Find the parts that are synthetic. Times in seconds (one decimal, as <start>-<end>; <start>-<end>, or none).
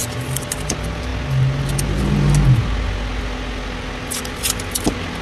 none